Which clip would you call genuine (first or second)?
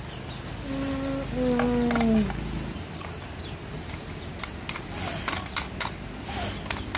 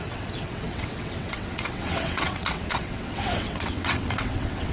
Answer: first